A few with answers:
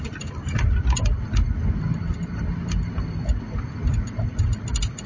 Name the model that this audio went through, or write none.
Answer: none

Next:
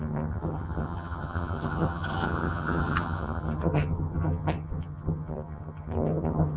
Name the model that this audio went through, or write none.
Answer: vocoder, HiFi-GAN